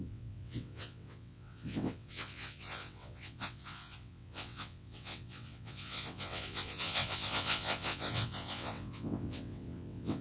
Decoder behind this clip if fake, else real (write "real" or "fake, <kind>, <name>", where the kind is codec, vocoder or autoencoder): fake, vocoder, WaveNeXt